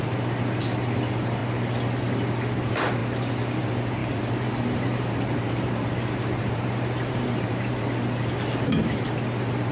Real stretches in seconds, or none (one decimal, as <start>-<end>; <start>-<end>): 0.0-4.0; 7.8-9.7